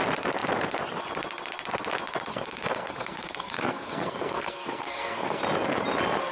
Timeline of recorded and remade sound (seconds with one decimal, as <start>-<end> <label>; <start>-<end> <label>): 0.0-2.3 recorded; 2.3-5.4 remade; 5.4-6.3 recorded